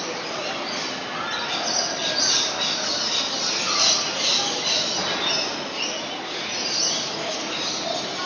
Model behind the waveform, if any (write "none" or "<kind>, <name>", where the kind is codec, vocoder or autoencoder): none